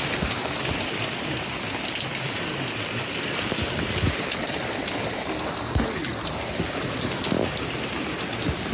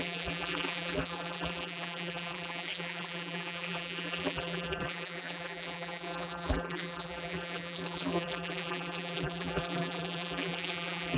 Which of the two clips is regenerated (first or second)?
second